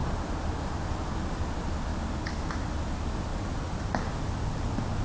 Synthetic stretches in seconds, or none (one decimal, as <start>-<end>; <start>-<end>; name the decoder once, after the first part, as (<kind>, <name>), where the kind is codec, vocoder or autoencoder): 3.3-3.8 (vocoder, BigVGAN v2)